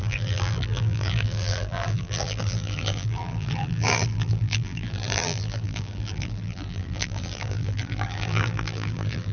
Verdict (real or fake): fake